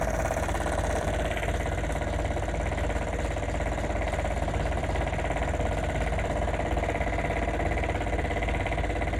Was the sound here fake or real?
real